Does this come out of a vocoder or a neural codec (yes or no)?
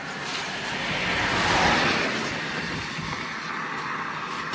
no